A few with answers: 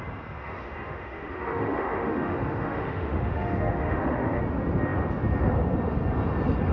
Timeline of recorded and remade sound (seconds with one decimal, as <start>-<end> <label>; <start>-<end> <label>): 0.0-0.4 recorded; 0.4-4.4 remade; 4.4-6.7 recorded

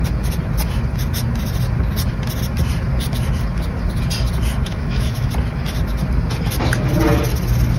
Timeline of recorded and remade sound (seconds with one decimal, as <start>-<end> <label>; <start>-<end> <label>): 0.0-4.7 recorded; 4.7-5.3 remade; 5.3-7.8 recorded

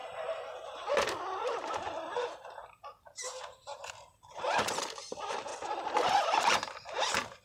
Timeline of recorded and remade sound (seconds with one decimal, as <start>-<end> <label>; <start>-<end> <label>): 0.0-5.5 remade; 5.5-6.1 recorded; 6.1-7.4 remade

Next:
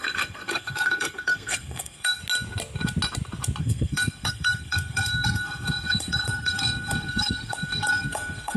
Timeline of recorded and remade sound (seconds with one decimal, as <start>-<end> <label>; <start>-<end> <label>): 0.0-2.2 remade; 2.2-3.6 recorded; 3.6-8.6 remade